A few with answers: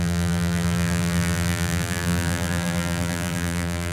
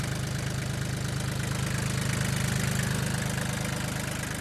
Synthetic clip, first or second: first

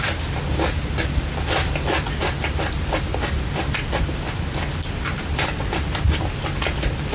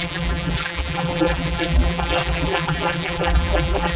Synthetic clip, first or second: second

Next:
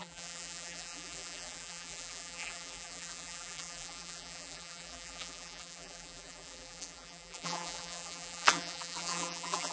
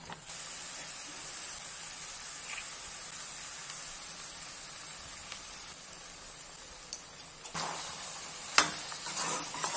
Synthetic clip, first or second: first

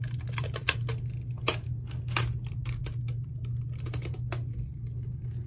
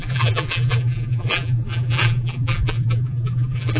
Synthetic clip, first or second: second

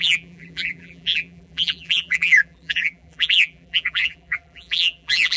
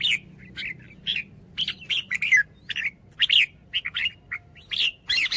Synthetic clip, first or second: first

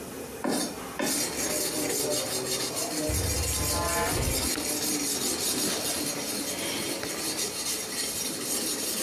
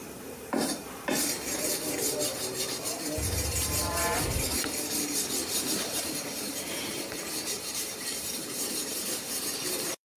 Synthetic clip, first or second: second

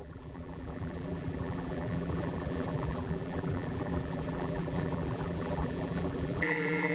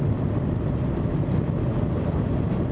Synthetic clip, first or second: first